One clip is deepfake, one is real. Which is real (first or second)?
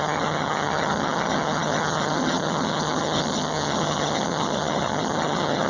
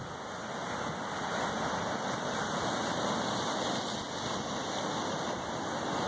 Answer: second